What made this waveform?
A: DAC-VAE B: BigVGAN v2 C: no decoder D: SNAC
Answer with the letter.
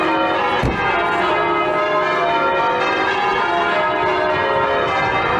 C